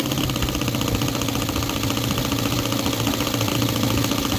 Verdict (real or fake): real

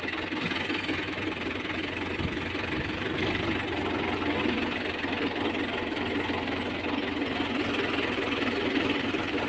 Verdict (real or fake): real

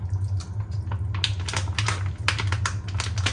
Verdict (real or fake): real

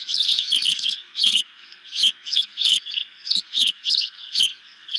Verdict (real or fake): fake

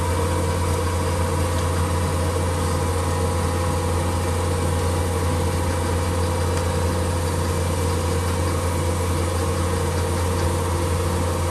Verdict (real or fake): real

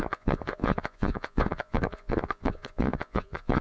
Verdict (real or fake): fake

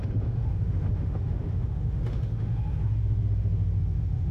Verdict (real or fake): fake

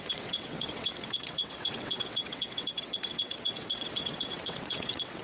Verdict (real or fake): fake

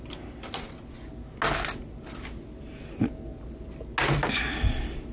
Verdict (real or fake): real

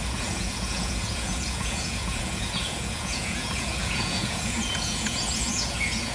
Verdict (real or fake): fake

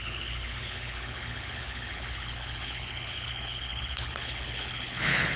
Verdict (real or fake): fake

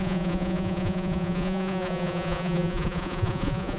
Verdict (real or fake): fake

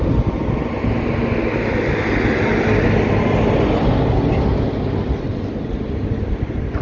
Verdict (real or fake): real